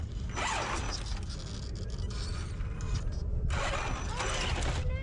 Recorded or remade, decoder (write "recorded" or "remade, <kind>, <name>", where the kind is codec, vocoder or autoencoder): recorded